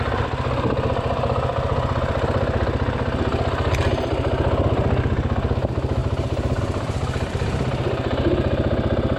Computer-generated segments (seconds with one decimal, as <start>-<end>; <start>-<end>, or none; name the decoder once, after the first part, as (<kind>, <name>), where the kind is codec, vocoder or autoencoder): none